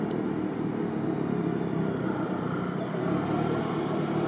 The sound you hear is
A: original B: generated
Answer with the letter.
A